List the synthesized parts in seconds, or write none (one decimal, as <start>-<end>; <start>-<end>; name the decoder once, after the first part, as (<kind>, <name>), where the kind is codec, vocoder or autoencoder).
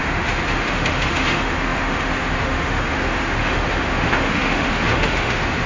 0.0-5.7 (autoencoder, DAC-VAE)